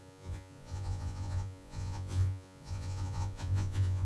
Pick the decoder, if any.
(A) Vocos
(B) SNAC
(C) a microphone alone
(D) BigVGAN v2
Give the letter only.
A